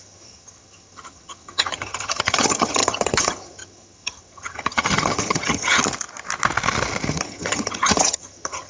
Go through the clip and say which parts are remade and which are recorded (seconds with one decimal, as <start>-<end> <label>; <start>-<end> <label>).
0.0-5.8 remade; 5.8-7.1 recorded; 7.1-8.7 remade